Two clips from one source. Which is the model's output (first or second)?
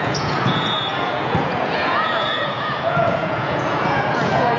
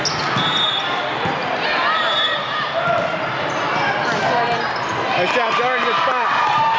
first